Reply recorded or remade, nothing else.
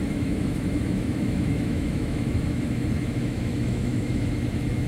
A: remade